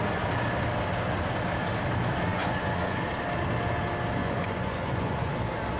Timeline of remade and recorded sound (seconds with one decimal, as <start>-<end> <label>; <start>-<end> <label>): 0.0-2.3 recorded; 2.3-3.0 remade; 3.0-4.2 recorded; 4.2-5.3 remade; 5.3-5.8 recorded